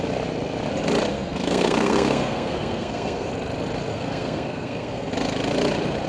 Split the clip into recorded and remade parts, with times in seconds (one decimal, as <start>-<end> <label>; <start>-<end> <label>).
0.0-1.1 recorded; 1.1-3.3 remade; 3.3-3.9 recorded; 3.9-5.1 remade; 5.1-6.1 recorded